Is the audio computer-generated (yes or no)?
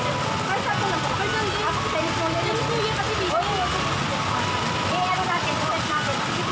no